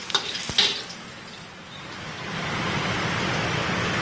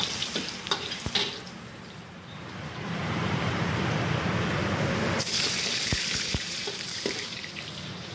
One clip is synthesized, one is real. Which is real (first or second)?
first